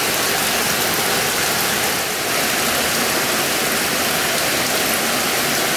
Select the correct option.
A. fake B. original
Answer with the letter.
B